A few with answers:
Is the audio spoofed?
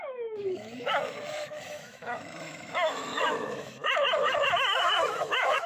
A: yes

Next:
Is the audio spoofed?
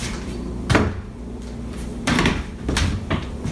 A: yes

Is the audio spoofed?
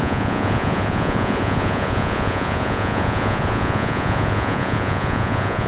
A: yes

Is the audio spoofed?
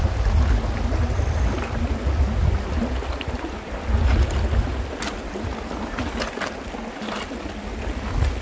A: no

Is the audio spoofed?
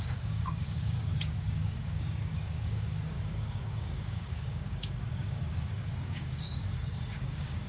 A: yes